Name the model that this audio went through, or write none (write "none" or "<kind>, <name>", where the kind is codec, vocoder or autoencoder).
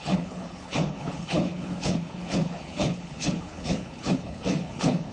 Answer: codec, HILCodec